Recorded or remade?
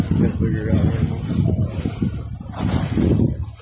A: recorded